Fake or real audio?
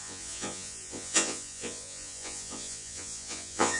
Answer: fake